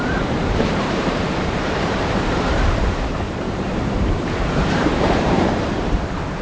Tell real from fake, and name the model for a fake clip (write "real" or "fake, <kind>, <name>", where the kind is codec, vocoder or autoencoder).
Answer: fake, vocoder, BigVGAN v2